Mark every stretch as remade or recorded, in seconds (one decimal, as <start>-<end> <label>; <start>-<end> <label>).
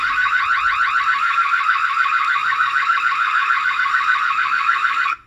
0.0-0.4 remade; 0.4-1.0 recorded; 1.0-5.3 remade